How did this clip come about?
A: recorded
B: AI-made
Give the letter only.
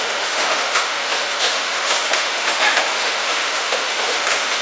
B